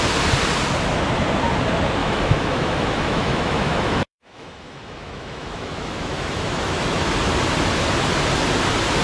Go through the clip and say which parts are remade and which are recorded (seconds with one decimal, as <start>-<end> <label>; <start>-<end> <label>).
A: 0.0-2.0 recorded; 2.0-7.1 remade; 7.1-9.0 recorded